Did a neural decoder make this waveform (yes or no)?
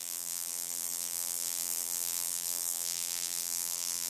yes